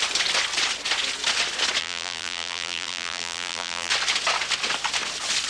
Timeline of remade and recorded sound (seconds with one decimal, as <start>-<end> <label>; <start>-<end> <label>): 0.0-1.8 recorded; 1.8-3.9 remade; 3.9-5.5 recorded